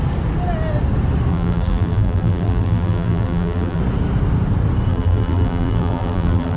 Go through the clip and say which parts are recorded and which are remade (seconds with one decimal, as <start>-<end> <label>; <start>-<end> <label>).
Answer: 0.0-1.3 recorded; 1.3-3.8 remade; 3.8-4.9 recorded; 4.9-6.6 remade